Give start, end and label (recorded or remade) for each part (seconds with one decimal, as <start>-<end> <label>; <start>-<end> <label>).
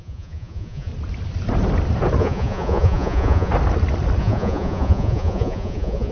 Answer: 0.0-0.9 remade; 0.9-2.2 recorded; 2.2-3.5 remade; 3.5-4.2 recorded; 4.2-6.1 remade